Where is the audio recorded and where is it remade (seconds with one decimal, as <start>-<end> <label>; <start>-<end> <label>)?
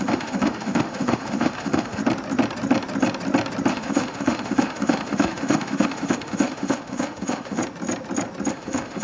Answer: 0.0-2.0 remade; 2.0-3.7 recorded; 3.7-7.6 remade; 7.6-8.5 recorded; 8.5-9.0 remade